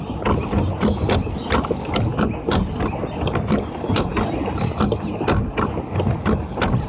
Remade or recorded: recorded